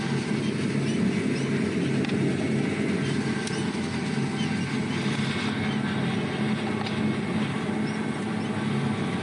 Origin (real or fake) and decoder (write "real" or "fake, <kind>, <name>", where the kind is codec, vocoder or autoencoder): real